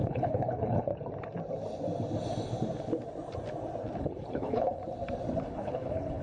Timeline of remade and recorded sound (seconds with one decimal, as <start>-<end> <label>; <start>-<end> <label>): 0.0-0.9 remade; 0.9-4.0 recorded; 4.0-4.8 remade; 4.8-5.4 recorded; 5.4-6.2 remade